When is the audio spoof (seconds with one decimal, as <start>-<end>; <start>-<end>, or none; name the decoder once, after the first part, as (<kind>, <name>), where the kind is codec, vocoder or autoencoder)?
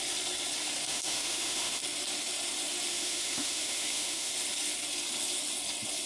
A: 0.9-1.8 (autoencoder, DAC-VAE); 2.9-4.3